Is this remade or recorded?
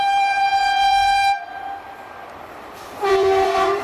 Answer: remade